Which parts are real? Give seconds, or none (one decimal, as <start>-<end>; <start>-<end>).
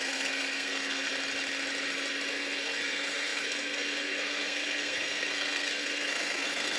1.1-2.3